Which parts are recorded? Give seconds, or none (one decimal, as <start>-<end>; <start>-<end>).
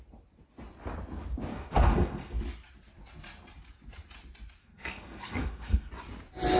0.0-1.5; 2.4-4.6; 5.9-6.6